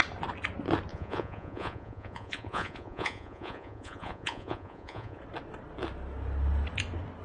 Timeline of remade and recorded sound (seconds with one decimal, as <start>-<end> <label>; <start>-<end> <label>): 0.0-0.9 recorded; 0.9-5.2 remade; 5.2-7.2 recorded